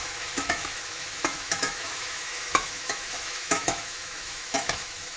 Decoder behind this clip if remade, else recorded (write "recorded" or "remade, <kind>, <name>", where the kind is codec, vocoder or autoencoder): remade, autoencoder, DAC-VAE